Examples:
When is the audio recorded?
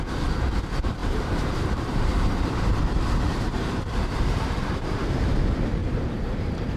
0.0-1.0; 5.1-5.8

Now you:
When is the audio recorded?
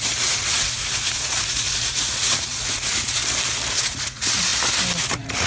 3.2-3.7; 4.5-5.0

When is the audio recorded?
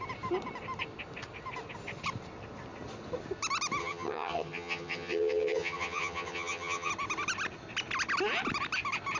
0.0-3.8; 6.9-9.2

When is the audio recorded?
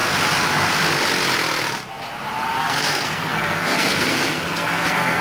0.0-2.6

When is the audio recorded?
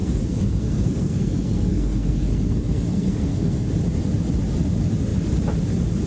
3.7-6.1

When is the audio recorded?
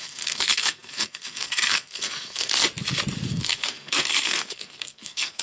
2.5-3.3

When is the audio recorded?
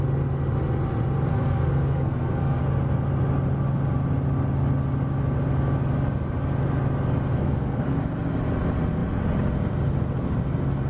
0.0-1.3; 2.6-7.4; 8.0-10.9